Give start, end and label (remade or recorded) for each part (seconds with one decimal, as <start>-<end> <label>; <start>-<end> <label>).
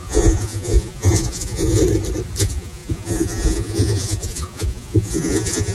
0.0-1.8 remade; 1.8-2.4 recorded; 2.4-5.7 remade